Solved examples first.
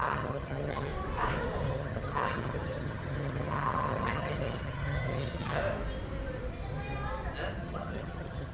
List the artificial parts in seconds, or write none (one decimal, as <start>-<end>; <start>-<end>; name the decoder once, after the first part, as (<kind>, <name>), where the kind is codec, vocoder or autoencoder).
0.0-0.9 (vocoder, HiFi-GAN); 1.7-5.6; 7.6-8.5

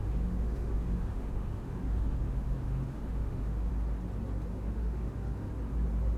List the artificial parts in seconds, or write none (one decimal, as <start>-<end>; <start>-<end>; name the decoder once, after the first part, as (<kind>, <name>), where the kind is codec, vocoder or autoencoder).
0.0-3.7 (autoencoder, DAC-VAE); 4.5-5.5

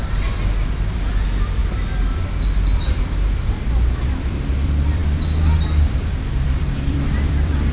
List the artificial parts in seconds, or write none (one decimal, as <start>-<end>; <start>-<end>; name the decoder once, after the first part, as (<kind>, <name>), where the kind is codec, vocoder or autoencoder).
0.0-5.0 (vocoder, BigVGAN v2); 5.9-7.7

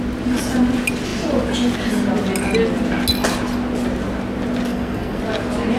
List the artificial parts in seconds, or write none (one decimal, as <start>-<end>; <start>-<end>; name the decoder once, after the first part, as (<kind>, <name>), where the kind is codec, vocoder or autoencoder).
4.7-5.2 (codec, SNAC)

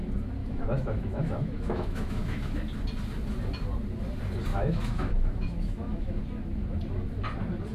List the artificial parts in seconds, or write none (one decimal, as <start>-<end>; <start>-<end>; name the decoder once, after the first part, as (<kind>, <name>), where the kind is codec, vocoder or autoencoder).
0.4-2.6 (autoencoder, DAC-VAE); 4.5-6.2

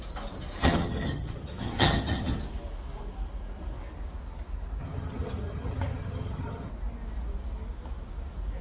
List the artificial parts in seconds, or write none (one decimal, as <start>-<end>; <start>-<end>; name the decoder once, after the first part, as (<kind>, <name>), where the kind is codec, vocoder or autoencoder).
0.6-2.4 (vocoder, HiFi-GAN); 4.8-6.7